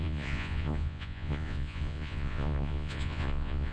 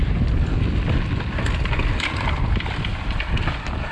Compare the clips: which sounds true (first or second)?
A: second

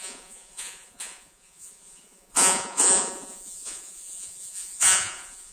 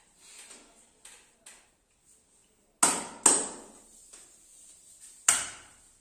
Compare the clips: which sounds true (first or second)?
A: second